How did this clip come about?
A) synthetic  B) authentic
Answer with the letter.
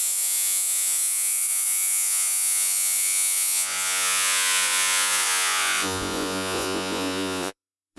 A